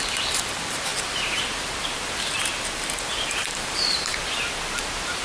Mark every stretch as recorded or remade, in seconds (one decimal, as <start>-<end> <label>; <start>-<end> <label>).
0.0-4.1 remade; 4.1-4.8 recorded; 4.8-5.2 remade